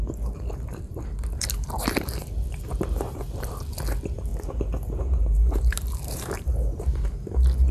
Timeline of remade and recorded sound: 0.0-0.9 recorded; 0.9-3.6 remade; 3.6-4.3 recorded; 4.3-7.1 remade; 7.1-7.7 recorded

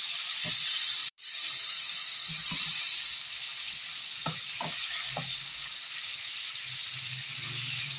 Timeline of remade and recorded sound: 0.0-1.0 recorded; 1.0-2.8 remade; 2.8-8.0 recorded

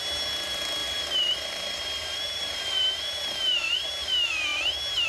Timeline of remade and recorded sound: 0.0-0.8 recorded; 0.8-3.9 remade; 3.9-5.1 recorded

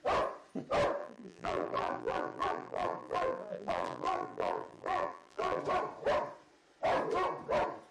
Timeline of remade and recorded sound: 0.0-1.0 recorded; 1.0-5.6 remade; 5.6-7.9 recorded